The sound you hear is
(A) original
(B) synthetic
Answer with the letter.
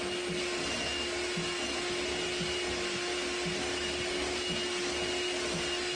A